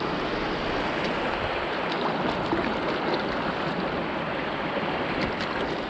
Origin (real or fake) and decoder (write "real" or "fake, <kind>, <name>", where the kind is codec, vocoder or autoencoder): real